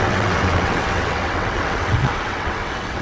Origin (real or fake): fake